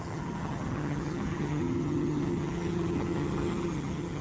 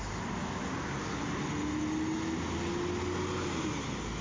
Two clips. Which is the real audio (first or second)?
second